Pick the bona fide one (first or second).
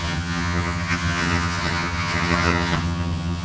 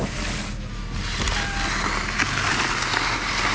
second